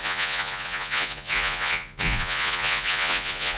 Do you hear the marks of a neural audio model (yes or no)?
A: yes